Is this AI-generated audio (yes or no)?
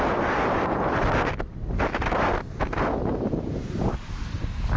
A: no